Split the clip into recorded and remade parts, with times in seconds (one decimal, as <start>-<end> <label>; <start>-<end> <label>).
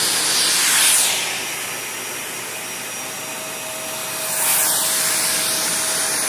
0.0-6.3 recorded